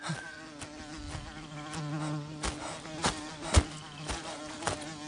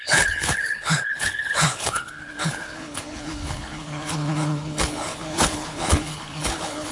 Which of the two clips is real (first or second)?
first